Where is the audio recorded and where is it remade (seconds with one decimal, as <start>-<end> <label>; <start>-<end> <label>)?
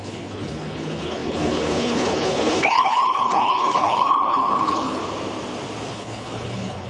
0.0-5.0 remade; 5.0-5.9 recorded; 5.9-6.9 remade